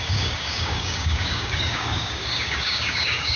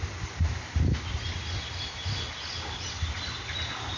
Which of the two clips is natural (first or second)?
second